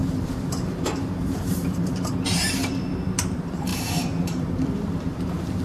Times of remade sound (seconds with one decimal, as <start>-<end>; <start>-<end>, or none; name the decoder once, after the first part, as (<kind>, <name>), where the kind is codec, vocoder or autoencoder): 0.0-5.6 (vocoder, BigVGAN v2)